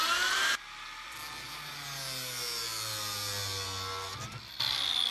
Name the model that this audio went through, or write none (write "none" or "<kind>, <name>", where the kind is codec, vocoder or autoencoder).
none